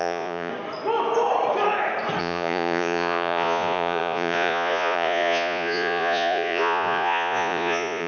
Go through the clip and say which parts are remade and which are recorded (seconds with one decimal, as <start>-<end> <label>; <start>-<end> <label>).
0.0-0.5 remade; 0.5-2.2 recorded; 2.2-8.1 remade